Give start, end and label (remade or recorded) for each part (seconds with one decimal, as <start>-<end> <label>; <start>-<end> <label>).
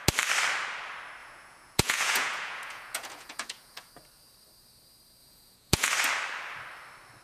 0.0-1.2 recorded; 1.2-3.9 remade; 3.9-5.2 recorded; 5.2-5.9 remade; 5.9-7.2 recorded